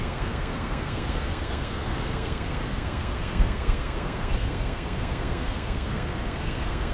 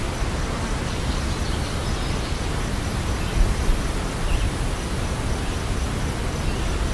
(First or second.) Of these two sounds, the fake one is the first